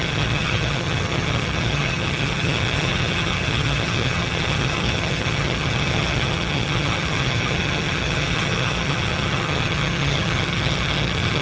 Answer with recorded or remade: remade